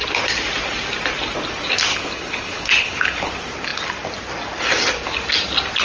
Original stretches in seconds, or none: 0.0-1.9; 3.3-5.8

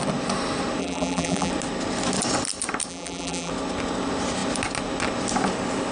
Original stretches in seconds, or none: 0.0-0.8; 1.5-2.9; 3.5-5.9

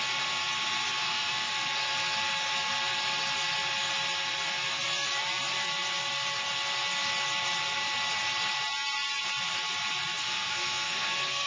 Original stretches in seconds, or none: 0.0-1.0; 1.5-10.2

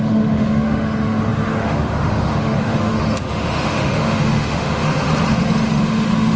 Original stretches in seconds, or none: 5.1-5.8

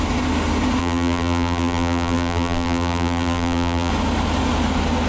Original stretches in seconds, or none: 0.0-0.8; 3.9-5.1

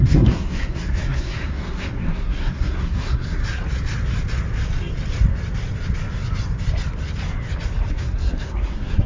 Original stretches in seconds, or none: 3.4-7.9

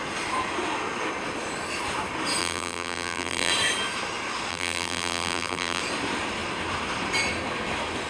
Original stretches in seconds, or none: 0.0-2.4; 3.5-4.5; 5.8-8.1

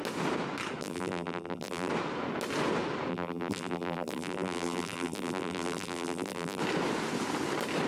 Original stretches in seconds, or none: 0.0-0.8; 1.9-3.1; 6.6-7.9